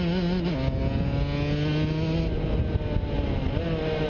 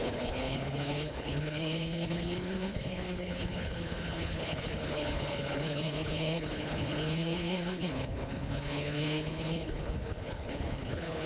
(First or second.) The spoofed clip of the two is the second